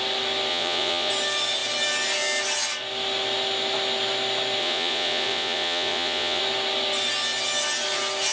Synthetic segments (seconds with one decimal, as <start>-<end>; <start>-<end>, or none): 0.5-1.1; 4.6-6.4